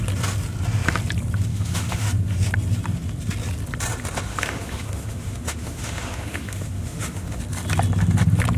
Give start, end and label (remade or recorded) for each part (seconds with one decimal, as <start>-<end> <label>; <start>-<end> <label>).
0.0-1.5 recorded; 1.5-2.1 remade; 2.1-4.3 recorded; 4.3-7.4 remade; 7.4-8.6 recorded